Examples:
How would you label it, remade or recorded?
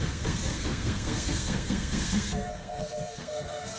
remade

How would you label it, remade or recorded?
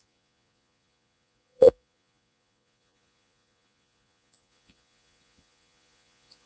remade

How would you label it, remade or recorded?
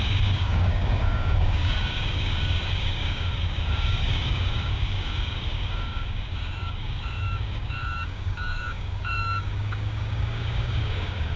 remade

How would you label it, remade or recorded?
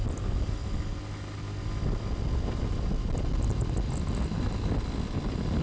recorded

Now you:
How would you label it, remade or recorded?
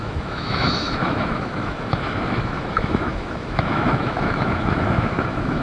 remade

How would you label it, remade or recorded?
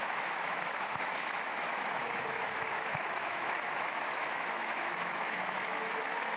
remade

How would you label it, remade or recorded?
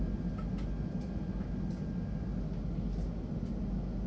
recorded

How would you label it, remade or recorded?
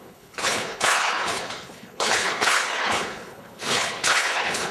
remade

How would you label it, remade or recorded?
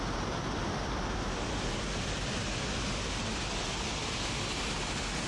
recorded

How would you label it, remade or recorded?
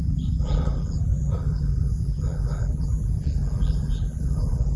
remade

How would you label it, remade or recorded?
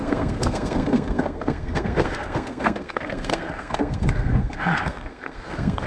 remade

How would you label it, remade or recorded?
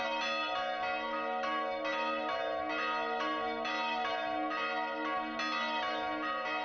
recorded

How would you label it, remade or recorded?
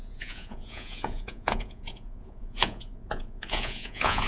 remade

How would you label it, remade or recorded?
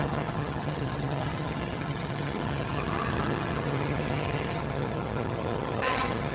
remade